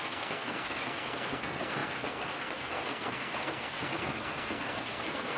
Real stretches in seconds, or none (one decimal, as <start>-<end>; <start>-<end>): none